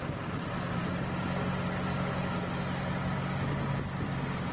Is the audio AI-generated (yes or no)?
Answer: no